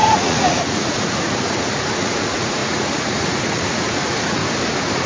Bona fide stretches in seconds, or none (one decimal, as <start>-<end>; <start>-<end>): 4.4-5.1

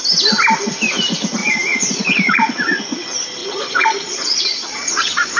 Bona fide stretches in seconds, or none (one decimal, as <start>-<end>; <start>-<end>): 0.0-1.4; 2.8-3.4

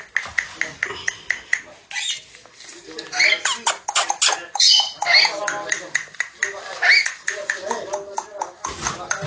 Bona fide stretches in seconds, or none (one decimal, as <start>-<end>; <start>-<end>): 0.0-7.0; 7.7-9.3

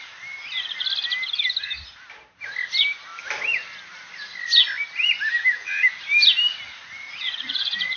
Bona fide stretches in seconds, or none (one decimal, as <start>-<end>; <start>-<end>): 0.0-6.7

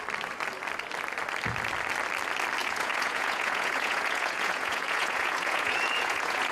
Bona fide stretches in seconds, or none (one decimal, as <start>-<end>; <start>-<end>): 0.0-2.6